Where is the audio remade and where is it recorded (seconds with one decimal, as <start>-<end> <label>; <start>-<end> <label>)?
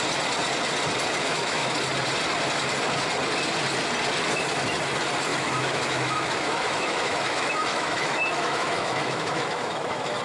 0.0-1.2 recorded; 1.2-1.7 remade; 1.7-5.3 recorded; 5.3-10.2 remade